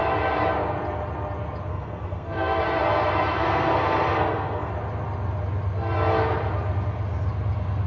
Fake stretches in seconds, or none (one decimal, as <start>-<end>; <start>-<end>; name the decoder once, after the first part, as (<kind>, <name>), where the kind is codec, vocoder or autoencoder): 1.7-2.6 (codec, SNAC); 3.3-4.7